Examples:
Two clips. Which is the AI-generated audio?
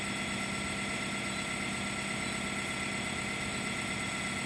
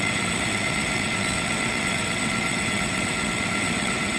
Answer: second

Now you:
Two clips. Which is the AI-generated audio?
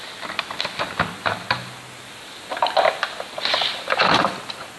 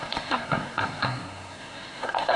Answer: second